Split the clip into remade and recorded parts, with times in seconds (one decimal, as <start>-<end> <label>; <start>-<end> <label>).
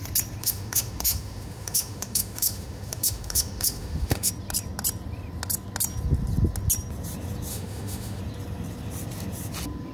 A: 0.0-0.4 recorded; 0.4-4.3 remade; 4.3-7.5 recorded; 7.5-8.2 remade; 8.2-9.9 recorded